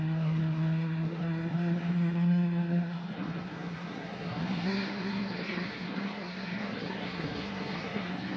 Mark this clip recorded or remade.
remade